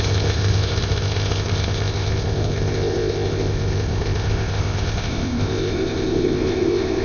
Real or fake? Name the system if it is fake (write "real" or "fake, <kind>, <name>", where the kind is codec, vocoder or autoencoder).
fake, codec, ZipCodec